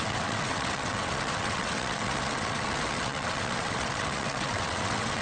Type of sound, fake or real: fake